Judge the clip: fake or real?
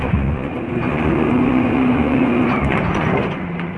fake